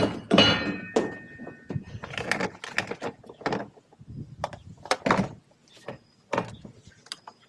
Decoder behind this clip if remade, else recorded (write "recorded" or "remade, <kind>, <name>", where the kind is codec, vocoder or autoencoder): recorded